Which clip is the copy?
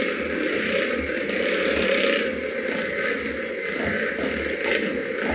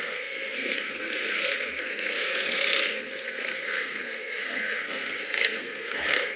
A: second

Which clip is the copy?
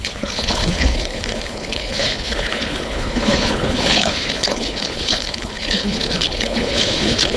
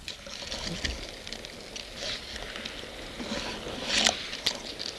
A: first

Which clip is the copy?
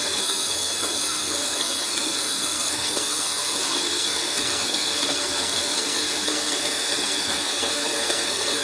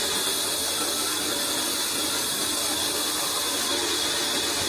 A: first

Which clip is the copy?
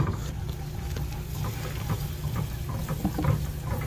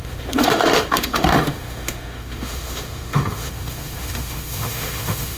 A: second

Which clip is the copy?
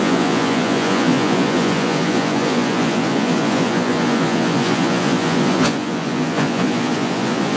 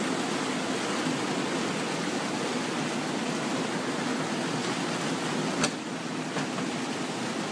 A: first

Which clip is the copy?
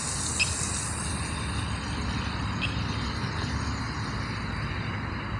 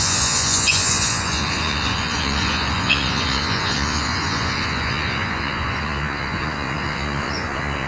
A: second